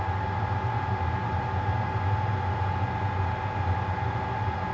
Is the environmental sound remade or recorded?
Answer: recorded